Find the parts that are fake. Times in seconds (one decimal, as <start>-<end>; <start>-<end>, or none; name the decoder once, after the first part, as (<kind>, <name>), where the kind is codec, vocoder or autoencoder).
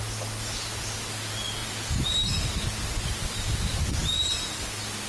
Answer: 1.6-2.5 (vocoder, BigVGAN v2)